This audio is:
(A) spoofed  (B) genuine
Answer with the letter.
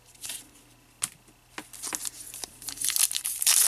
B